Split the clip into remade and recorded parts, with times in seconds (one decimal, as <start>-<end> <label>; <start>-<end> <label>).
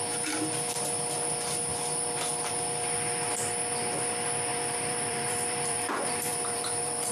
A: 0.0-4.5 recorded; 4.5-7.1 remade